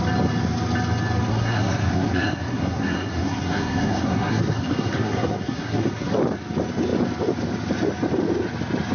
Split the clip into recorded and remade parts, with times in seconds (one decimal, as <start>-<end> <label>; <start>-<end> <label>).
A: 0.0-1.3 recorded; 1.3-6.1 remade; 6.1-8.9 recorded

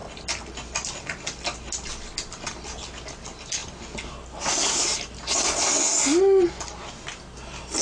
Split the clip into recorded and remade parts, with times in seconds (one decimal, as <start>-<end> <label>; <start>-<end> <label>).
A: 0.0-7.8 recorded

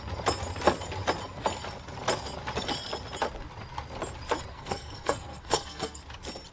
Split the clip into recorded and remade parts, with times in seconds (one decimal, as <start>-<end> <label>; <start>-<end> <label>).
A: 0.0-4.5 recorded; 4.5-6.0 remade; 6.0-6.5 recorded

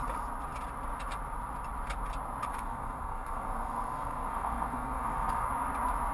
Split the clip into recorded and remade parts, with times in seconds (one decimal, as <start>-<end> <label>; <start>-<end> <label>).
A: 0.0-2.5 recorded; 2.5-5.5 remade; 5.5-6.1 recorded

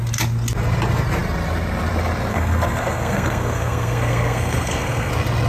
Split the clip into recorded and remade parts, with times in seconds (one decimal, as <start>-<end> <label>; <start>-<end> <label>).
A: 0.0-2.3 recorded; 2.3-5.1 remade; 5.1-5.5 recorded